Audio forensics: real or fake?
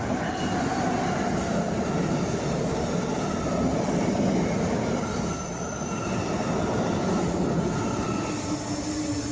real